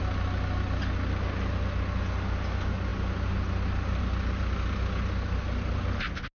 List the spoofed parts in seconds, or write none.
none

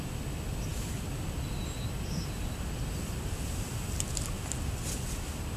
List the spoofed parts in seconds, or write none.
none